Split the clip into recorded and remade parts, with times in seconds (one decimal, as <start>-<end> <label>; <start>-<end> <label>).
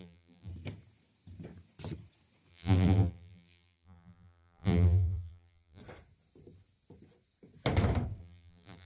0.0-0.5 remade; 0.5-2.5 recorded; 2.5-5.8 remade; 5.8-8.2 recorded; 8.2-8.9 remade